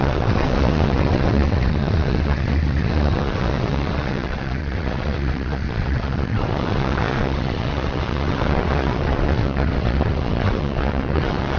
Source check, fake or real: fake